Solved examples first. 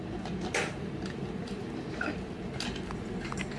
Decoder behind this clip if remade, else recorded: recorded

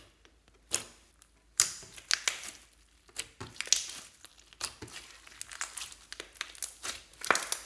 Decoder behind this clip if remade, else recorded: recorded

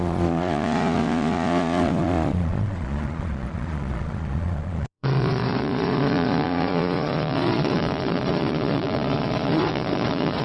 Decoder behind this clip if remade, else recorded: remade, vocoder, Vocos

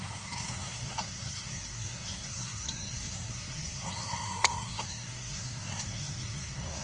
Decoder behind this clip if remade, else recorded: remade, codec, SNAC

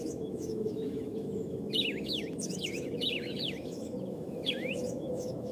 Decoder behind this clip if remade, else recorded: remade, autoencoder, DAC-VAE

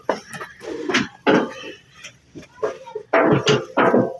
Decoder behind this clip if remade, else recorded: recorded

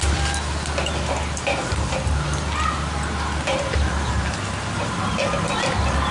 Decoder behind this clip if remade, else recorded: recorded